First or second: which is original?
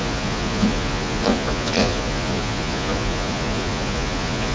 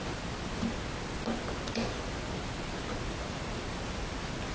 second